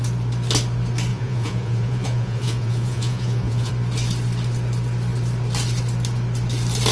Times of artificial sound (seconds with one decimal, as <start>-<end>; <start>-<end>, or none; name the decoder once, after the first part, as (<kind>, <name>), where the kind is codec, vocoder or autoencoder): 1.1-3.7 (vocoder, Vocos)